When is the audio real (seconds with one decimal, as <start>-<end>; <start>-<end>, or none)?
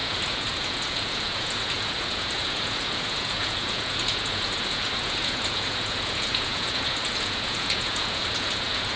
none